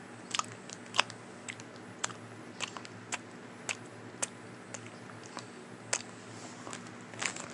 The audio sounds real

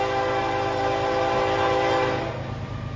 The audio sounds real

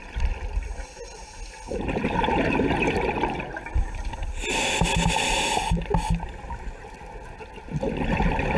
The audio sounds real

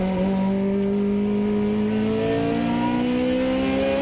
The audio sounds real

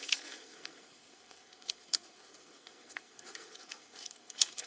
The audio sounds fake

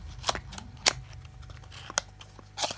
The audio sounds real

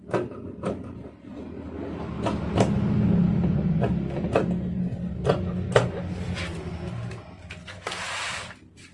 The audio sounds real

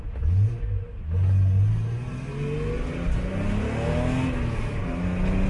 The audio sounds real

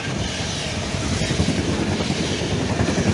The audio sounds fake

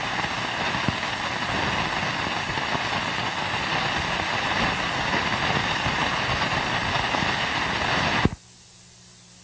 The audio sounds real